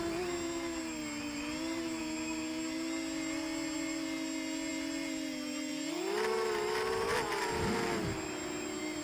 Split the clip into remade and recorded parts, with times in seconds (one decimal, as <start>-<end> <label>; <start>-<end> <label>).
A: 0.0-9.0 recorded